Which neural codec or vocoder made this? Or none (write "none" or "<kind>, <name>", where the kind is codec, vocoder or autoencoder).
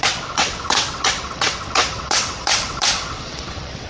vocoder, WaveNeXt